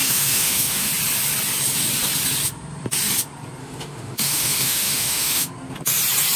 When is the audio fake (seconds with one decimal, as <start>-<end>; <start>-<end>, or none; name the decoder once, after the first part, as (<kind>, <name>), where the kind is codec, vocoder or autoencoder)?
0.0-0.9 (autoencoder, DAC-VAE); 3.6-5.5